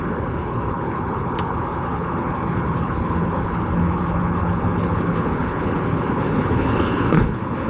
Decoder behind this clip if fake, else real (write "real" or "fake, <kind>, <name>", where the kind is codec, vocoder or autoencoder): fake, codec, HILCodec